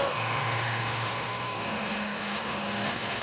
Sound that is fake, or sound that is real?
fake